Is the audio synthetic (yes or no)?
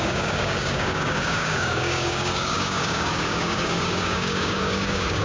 yes